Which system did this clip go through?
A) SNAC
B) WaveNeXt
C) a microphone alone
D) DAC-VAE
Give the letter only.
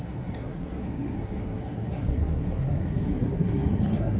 A